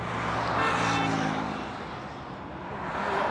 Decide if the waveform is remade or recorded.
recorded